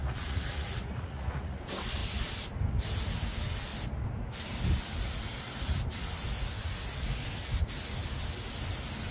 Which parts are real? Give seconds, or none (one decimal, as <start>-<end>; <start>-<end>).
1.6-9.1